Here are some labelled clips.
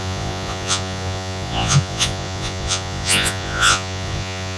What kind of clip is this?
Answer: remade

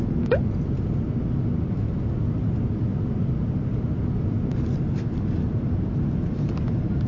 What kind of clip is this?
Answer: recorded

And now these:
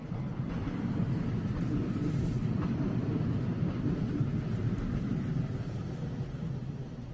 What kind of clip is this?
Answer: recorded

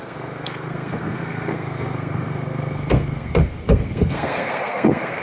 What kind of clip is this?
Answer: remade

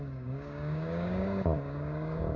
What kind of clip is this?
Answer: remade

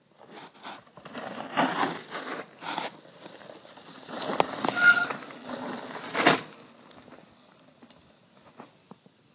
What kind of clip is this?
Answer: recorded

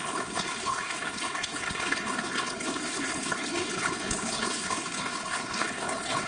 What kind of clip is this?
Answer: remade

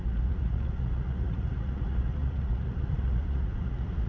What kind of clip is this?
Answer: remade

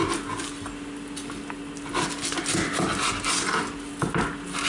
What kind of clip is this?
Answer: recorded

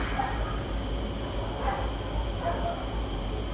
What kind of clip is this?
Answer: recorded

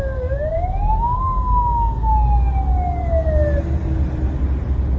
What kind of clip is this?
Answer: recorded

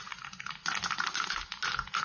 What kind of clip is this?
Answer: recorded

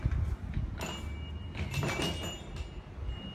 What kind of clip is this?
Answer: recorded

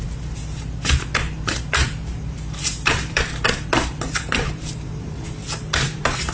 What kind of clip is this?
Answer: remade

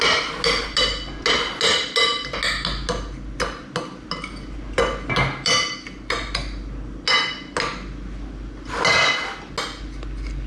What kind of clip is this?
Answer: recorded